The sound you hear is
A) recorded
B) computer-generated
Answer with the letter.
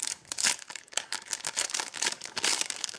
B